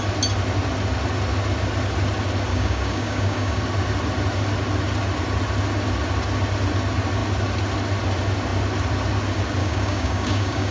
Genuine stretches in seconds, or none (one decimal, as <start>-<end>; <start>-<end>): 0.0-2.5; 3.6-9.6